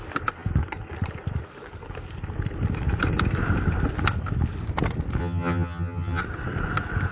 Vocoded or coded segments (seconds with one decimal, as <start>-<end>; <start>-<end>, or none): 5.2-6.2